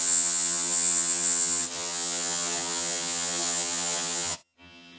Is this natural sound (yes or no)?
no